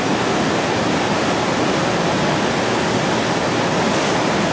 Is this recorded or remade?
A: recorded